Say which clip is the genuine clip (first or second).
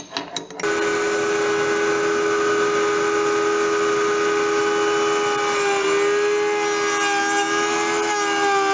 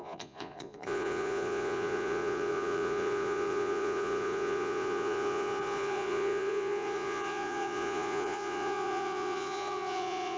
first